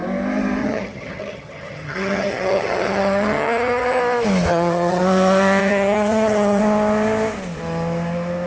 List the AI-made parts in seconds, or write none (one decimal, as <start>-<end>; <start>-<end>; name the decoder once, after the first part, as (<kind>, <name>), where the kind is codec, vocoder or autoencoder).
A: 0.6-4.0 (vocoder, HiFi-GAN); 4.5-5.0; 5.6-6.6